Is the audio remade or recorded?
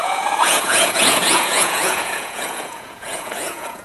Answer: remade